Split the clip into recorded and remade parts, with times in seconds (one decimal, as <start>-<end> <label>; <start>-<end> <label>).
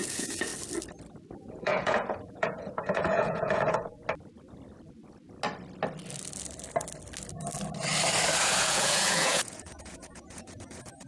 0.0-0.5 remade; 0.5-1.5 recorded; 1.5-3.9 remade; 3.9-8.4 recorded; 8.4-11.1 remade